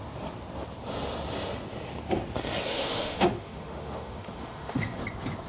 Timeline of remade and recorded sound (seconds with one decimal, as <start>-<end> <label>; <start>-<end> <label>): 0.0-2.7 recorded; 2.7-5.0 remade; 5.0-5.5 recorded